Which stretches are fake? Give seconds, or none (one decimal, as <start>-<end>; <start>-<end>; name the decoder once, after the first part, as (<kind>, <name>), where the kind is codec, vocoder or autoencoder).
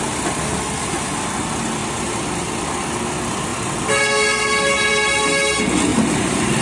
1.8-2.5 (vocoder, BigVGAN v2); 5.9-6.6